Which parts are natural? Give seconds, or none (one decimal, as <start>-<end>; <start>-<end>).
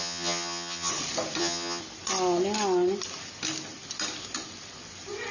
0.9-1.4; 1.8-5.3